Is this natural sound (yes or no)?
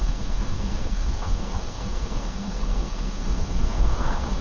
no